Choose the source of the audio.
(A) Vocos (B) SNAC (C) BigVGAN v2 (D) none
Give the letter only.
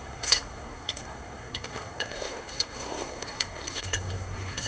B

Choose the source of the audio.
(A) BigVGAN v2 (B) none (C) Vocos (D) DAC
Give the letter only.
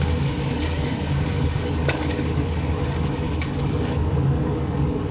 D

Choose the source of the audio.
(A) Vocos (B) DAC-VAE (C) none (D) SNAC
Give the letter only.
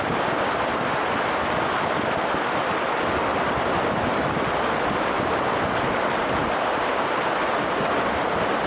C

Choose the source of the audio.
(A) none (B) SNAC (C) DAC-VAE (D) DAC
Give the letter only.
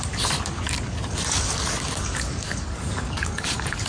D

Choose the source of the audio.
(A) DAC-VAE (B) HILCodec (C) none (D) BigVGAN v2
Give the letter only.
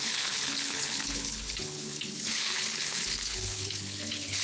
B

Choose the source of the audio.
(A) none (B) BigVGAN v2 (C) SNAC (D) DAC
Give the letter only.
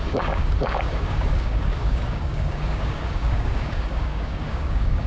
D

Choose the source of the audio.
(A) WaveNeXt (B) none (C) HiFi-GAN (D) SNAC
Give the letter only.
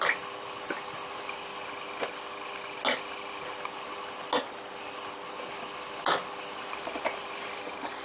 B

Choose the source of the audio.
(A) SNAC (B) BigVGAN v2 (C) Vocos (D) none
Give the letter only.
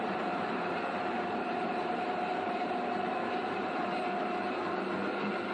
B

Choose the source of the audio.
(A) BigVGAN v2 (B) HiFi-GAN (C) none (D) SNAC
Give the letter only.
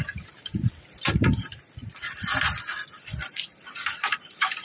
A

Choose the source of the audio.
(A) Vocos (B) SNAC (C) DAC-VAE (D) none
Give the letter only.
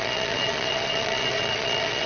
A